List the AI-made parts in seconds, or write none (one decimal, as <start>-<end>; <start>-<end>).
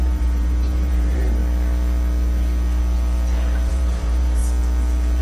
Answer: 0.0-1.4; 3.7-4.4